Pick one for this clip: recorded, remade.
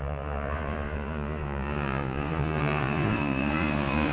remade